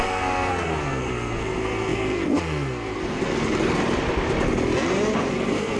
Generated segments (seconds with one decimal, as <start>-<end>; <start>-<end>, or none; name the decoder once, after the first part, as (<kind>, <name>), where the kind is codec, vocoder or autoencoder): 0.0-3.8 (codec, SNAC); 5.3-5.8